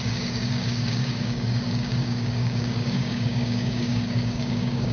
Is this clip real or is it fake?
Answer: fake